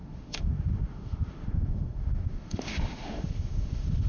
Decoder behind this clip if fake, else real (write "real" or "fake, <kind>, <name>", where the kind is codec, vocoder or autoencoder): fake, autoencoder, DAC-VAE